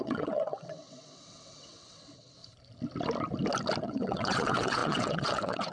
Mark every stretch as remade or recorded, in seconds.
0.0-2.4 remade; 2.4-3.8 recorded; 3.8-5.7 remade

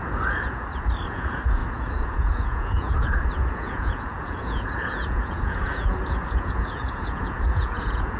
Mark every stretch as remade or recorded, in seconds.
0.0-8.2 remade